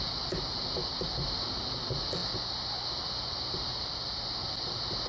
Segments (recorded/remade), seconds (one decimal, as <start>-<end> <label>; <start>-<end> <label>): 0.0-5.1 recorded